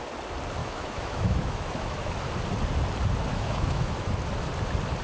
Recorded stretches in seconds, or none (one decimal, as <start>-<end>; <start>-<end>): 0.0-0.6; 2.1-3.3; 4.1-5.0